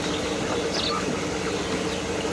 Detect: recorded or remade recorded